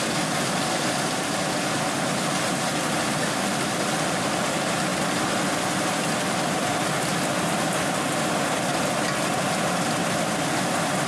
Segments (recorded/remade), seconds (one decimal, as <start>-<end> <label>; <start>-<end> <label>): 0.0-10.0 recorded; 10.0-11.1 remade